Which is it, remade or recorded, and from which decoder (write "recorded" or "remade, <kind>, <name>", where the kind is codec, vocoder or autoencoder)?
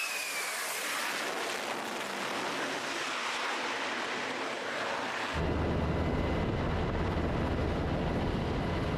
recorded